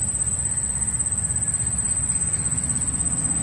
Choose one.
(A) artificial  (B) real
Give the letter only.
B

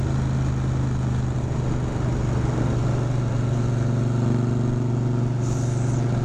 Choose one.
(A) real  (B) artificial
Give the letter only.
A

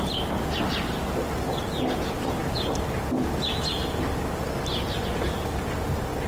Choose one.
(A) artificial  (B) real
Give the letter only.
B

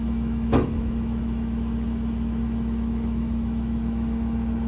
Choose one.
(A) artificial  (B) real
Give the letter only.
A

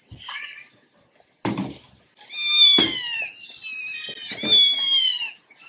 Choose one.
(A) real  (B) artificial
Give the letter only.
A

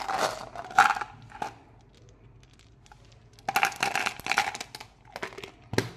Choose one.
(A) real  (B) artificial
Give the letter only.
A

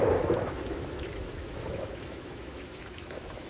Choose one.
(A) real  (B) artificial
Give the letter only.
B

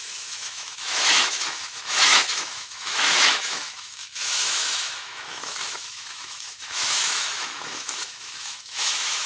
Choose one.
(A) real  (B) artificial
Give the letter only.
B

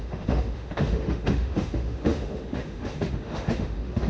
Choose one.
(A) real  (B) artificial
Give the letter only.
B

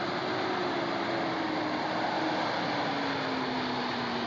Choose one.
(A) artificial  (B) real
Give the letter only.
B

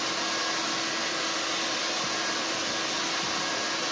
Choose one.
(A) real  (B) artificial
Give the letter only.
A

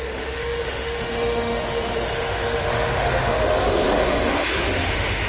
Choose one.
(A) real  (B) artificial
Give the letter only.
B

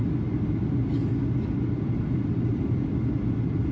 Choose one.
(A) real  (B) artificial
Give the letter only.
A